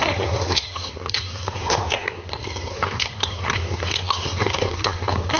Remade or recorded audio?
remade